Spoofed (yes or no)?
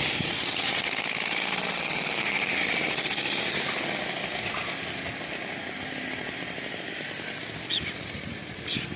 no